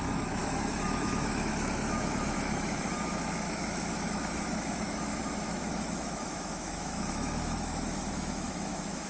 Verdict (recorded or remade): remade